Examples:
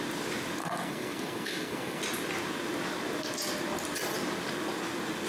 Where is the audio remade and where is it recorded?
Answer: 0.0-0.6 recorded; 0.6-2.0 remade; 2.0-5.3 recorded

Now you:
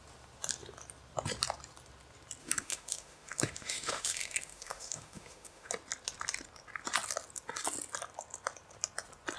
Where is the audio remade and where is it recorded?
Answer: 0.0-2.4 recorded; 2.4-5.7 remade; 5.7-9.4 recorded

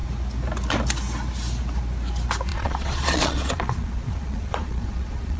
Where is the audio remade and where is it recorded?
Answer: 0.0-2.5 recorded; 2.5-5.4 remade

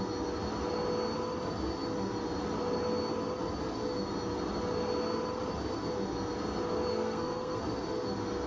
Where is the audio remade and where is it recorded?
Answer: 0.0-6.9 recorded; 6.9-7.6 remade; 7.6-8.5 recorded